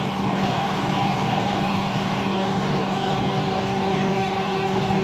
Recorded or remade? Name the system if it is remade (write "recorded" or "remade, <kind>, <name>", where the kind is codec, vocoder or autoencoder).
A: remade, codec, DAC